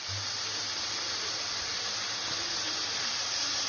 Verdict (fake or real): fake